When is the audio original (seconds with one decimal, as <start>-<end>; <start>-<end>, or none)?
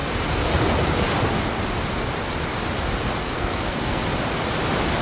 0.0-3.2; 4.0-5.0